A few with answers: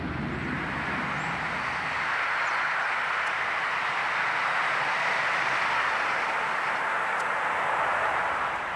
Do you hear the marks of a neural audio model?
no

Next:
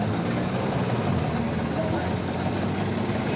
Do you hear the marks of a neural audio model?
no